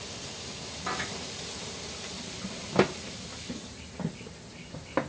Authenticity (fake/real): real